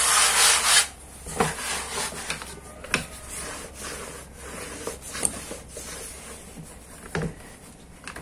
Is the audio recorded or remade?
recorded